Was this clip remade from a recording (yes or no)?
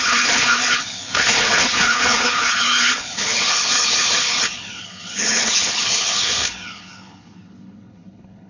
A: yes